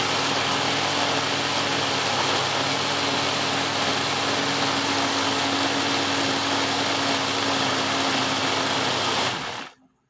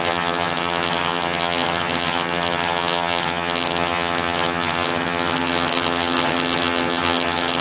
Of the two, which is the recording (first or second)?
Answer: first